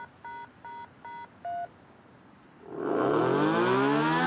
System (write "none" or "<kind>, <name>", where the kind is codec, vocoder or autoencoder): none